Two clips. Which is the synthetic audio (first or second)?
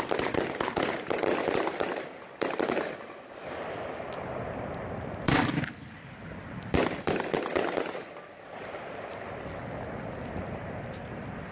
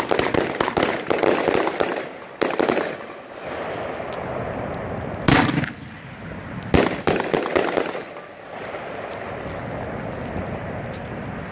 first